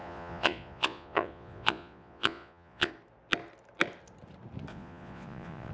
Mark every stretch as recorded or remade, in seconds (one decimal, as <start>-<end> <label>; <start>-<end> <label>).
0.0-2.9 remade; 2.9-4.7 recorded; 4.7-5.7 remade